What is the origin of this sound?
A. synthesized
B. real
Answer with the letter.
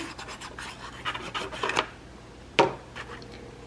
B